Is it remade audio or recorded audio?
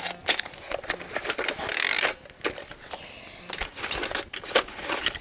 recorded